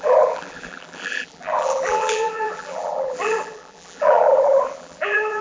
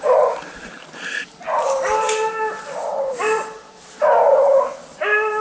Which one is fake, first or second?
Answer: first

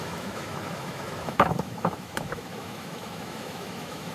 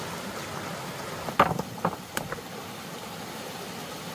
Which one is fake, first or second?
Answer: first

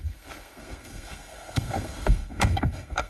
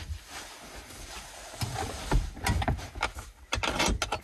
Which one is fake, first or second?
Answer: first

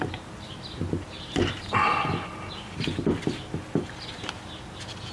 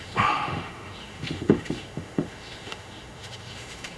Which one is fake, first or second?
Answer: second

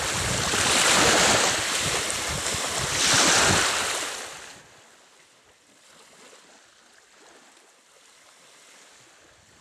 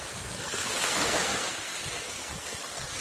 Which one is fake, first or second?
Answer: second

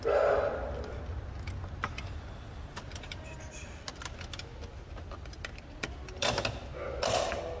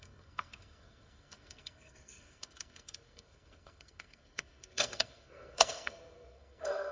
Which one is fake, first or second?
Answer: second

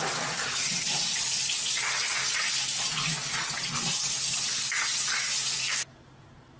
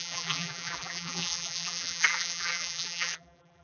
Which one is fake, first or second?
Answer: second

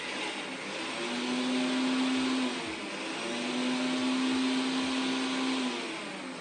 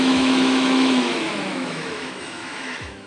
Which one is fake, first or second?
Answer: second